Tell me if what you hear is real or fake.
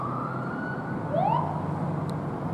real